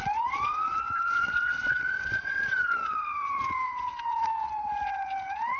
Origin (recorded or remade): remade